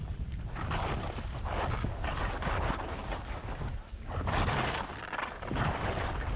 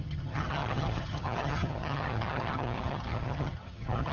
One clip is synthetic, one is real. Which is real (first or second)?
first